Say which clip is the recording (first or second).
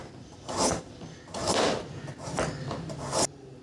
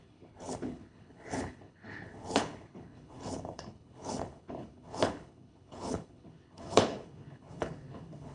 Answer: first